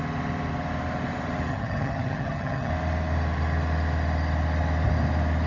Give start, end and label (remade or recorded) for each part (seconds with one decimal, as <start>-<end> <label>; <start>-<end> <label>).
0.0-1.5 recorded; 1.5-2.7 remade; 2.7-5.5 recorded